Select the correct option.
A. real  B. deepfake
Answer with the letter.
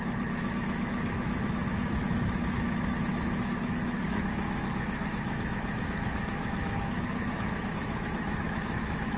B